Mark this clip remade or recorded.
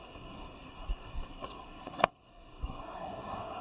remade